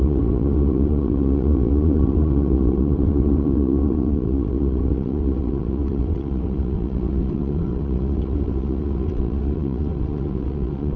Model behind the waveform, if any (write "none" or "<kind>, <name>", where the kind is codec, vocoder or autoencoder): vocoder, WaveNeXt